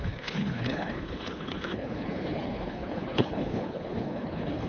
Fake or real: fake